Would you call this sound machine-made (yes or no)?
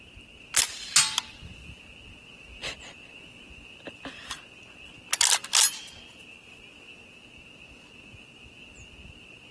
no